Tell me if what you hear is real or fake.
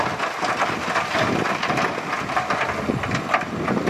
real